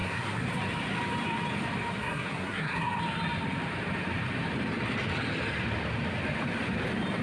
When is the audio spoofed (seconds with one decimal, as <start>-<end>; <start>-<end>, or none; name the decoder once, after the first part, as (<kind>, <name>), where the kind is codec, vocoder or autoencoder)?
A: 0.0-0.5 (codec, SNAC); 2.0-3.0